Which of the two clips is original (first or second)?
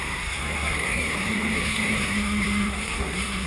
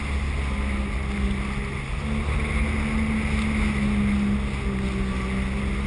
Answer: second